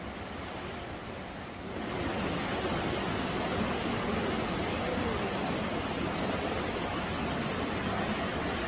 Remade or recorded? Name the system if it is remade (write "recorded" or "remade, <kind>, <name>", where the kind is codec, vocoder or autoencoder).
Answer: recorded